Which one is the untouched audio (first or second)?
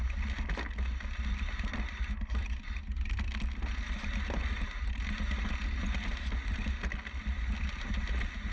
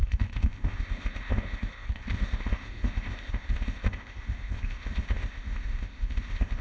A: first